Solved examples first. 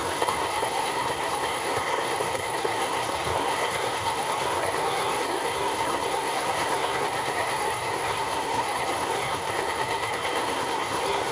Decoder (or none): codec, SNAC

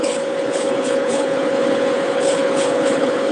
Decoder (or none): codec, HILCodec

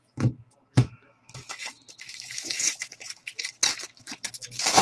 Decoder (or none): autoencoder, DAC-VAE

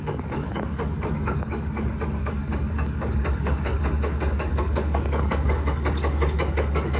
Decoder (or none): codec, DAC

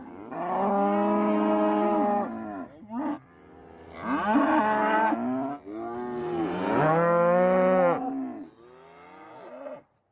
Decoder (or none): none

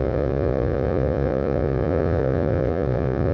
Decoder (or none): vocoder, Vocos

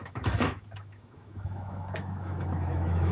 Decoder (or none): autoencoder, DAC-VAE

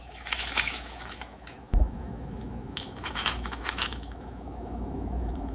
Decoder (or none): autoencoder, DAC-VAE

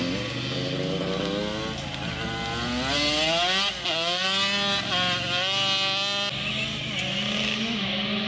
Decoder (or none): none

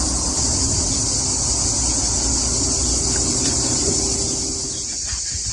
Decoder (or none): none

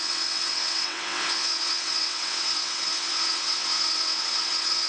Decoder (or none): vocoder, WaveNeXt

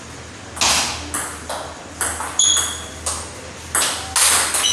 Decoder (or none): none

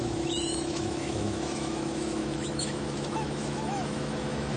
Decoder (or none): autoencoder, DAC-VAE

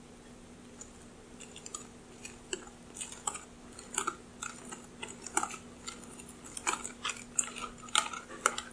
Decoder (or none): none